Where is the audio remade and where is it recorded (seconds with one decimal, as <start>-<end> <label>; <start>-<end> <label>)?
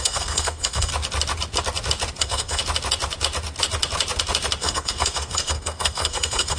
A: 0.0-0.9 remade; 0.9-2.2 recorded; 2.2-2.6 remade; 2.6-4.6 recorded; 4.6-6.6 remade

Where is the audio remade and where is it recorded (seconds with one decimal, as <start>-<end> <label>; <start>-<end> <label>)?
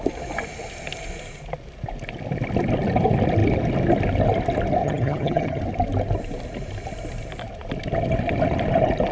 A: 0.0-4.8 recorded; 4.8-5.6 remade; 5.6-9.1 recorded